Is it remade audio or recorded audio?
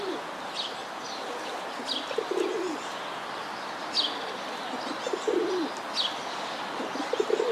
recorded